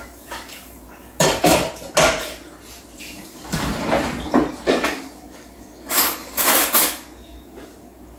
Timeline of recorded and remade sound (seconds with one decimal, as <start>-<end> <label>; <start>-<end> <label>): 0.0-1.6 remade; 1.6-3.0 recorded; 3.0-3.7 remade; 3.7-4.7 recorded; 4.7-8.2 remade

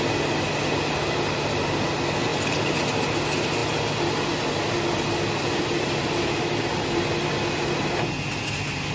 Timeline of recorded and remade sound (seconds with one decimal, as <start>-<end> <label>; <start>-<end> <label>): 0.0-8.9 recorded

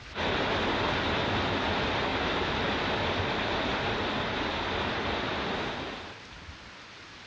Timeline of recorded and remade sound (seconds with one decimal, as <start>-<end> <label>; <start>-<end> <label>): 0.0-7.3 recorded

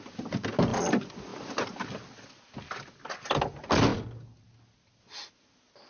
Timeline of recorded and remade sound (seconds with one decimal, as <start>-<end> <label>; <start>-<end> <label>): 0.0-5.9 recorded

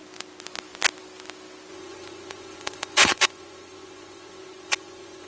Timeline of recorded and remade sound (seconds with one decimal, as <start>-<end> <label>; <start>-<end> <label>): 0.0-1.7 recorded; 1.7-5.3 remade

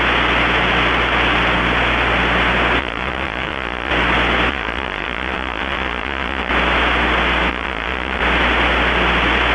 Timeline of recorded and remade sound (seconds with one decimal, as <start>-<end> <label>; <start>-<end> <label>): 0.0-2.8 recorded; 2.8-3.9 remade; 3.9-4.5 recorded; 4.5-6.5 remade; 6.5-7.5 recorded; 7.5-8.2 remade; 8.2-9.5 recorded

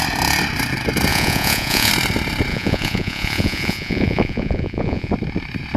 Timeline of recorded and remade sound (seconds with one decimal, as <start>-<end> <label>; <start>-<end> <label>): 0.0-1.1 recorded; 1.1-1.9 remade; 1.9-2.5 recorded; 2.5-5.1 remade; 5.1-5.8 recorded